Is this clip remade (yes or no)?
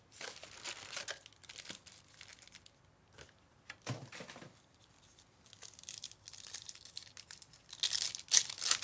no